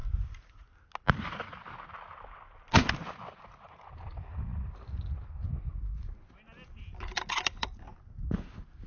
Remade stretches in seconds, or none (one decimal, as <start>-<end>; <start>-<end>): none

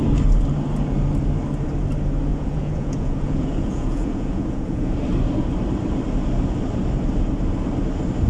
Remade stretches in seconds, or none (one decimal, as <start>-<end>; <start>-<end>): 2.3-4.8